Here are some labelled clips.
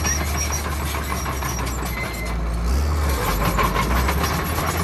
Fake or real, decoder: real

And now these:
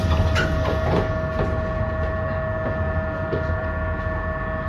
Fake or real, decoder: real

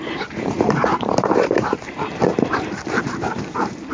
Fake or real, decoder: fake, vocoder, BigVGAN v2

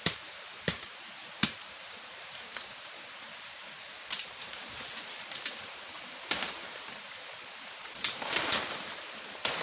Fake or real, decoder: fake, vocoder, BigVGAN v2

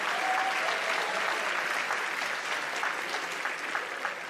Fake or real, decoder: real